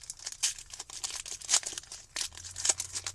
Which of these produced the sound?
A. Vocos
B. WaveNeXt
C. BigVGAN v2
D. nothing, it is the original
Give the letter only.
D